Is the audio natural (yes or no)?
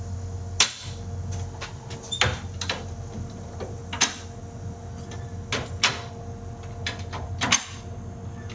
yes